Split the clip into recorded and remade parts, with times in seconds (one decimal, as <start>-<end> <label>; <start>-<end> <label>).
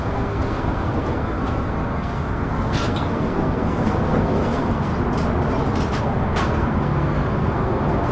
0.0-4.9 remade; 4.9-6.0 recorded; 6.0-8.1 remade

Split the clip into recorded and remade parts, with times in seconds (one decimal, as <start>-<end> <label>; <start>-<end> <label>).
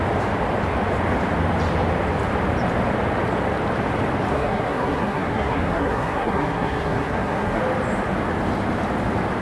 0.0-4.3 recorded; 4.3-7.6 remade; 7.6-9.4 recorded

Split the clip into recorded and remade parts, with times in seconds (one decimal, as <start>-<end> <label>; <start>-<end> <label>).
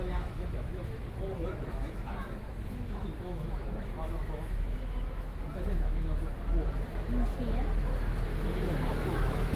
0.0-0.7 remade; 0.7-1.4 recorded; 1.4-6.3 remade; 6.3-7.8 recorded; 7.8-9.6 remade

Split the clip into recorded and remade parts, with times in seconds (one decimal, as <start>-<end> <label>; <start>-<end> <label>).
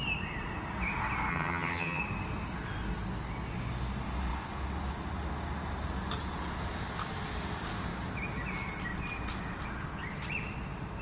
0.0-1.3 recorded; 1.3-2.0 remade; 2.0-11.0 recorded